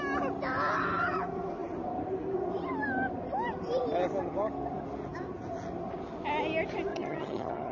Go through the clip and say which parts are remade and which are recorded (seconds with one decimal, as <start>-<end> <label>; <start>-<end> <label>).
0.0-6.9 recorded; 6.9-7.7 remade